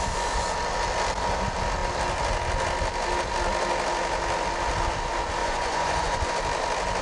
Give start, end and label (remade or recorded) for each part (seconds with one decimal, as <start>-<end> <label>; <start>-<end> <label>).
0.0-5.4 recorded; 5.4-6.3 remade; 6.3-7.0 recorded